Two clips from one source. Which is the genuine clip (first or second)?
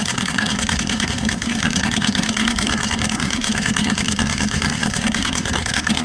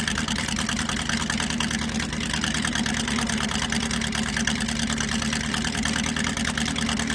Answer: second